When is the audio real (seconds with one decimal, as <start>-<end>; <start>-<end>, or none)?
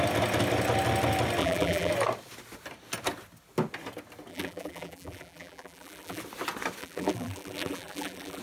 0.0-1.4; 1.9-4.3; 6.2-6.8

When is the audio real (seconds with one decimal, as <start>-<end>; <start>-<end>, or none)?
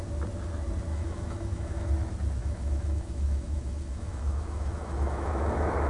0.0-0.9; 1.9-2.4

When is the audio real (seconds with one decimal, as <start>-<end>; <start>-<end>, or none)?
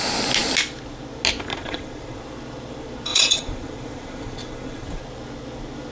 0.0-1.5; 2.2-3.1; 5.0-5.9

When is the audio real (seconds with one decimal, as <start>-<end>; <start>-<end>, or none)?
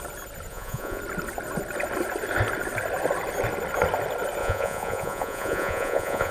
0.0-0.5; 1.0-4.4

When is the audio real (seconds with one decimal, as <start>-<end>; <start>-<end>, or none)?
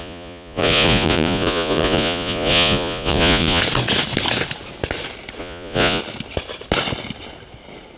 3.6-5.4; 6.0-8.0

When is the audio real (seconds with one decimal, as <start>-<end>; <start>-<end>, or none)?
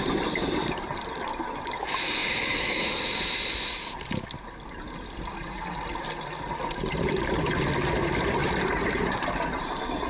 0.0-10.1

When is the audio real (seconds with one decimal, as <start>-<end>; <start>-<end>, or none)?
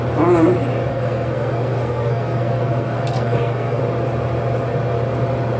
0.0-0.9; 3.8-5.6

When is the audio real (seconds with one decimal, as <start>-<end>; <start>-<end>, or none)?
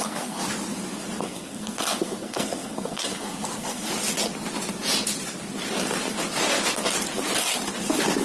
0.4-1.2; 3.9-8.2